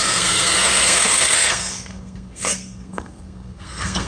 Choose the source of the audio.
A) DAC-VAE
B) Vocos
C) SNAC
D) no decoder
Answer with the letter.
C